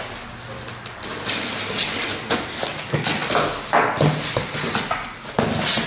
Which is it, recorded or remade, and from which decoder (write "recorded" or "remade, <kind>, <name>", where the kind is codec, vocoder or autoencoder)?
recorded